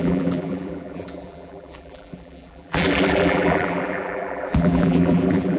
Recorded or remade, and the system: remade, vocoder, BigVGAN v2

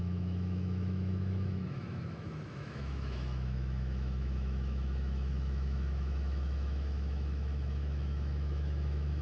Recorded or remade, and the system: remade, autoencoder, DAC-VAE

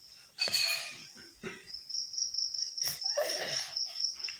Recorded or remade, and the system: remade, codec, DAC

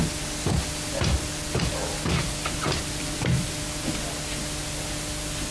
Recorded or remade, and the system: recorded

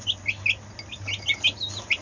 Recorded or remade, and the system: recorded